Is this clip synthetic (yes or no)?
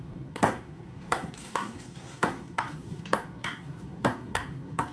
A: yes